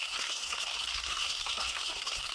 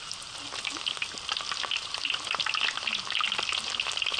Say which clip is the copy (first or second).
first